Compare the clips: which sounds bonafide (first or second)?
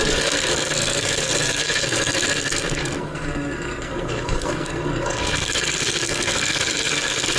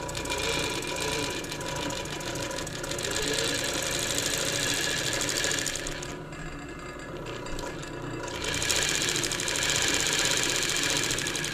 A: second